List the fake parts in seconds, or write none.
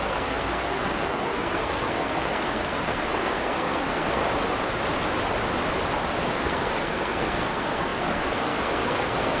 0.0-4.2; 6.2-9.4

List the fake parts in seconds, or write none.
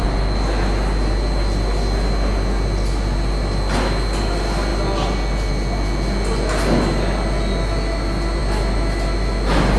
none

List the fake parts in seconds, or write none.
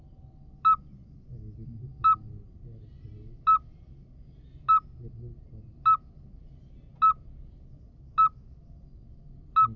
none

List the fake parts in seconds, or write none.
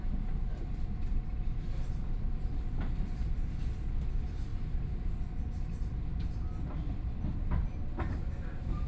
none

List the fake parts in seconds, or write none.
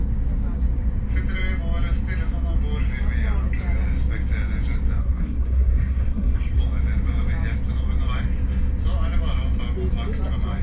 5.0-6.6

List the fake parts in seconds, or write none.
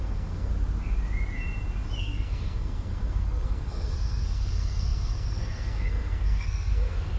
0.0-0.5; 2.0-7.2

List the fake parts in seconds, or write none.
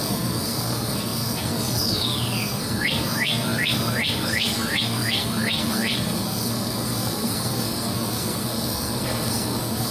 0.0-9.9